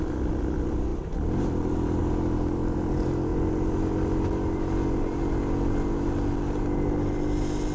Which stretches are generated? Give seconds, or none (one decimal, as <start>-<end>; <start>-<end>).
none